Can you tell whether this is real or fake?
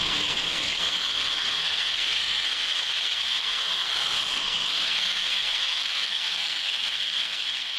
fake